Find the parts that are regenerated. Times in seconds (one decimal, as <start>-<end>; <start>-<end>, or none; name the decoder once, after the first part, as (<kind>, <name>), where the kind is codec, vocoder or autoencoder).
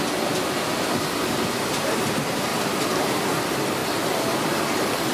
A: none